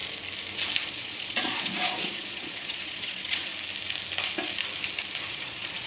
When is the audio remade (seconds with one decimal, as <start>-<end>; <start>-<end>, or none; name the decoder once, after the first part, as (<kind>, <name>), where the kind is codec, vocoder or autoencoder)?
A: 0.9-3.5 (vocoder, Vocos); 5.3-5.9